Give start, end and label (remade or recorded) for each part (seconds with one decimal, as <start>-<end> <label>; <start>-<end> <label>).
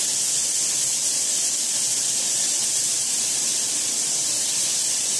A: 0.0-1.9 recorded; 1.9-5.2 remade